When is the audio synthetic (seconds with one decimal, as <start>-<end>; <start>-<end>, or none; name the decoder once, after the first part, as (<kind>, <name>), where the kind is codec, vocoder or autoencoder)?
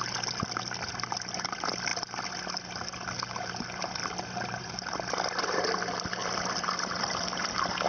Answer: none